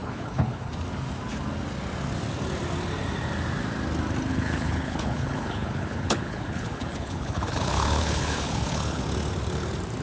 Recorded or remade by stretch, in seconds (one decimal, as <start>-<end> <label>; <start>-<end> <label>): 0.0-0.7 remade; 0.7-4.3 recorded; 4.3-9.0 remade; 9.0-10.0 recorded